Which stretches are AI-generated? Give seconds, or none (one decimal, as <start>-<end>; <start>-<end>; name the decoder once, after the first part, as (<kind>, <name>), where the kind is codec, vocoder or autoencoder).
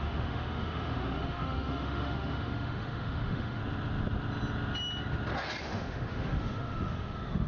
0.0-3.6 (autoencoder, DAC-VAE); 5.6-7.5